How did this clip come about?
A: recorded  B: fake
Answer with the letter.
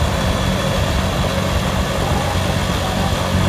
A